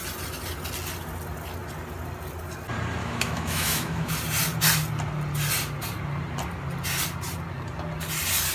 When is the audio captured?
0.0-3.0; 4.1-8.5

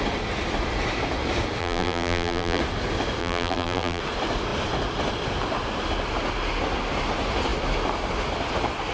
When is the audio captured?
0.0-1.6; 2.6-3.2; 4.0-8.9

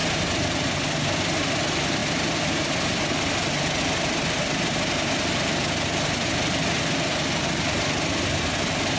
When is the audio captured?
0.0-9.0

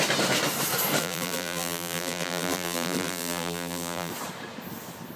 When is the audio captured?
0.0-1.0; 4.1-5.2

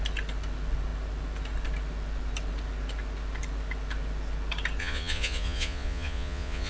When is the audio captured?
0.0-4.8